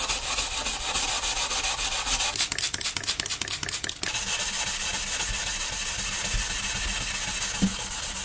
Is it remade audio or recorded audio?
recorded